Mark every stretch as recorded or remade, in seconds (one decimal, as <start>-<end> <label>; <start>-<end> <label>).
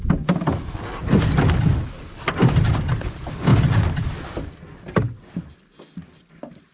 0.0-6.7 recorded